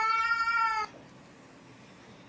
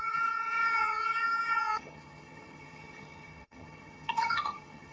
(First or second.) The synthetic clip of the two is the second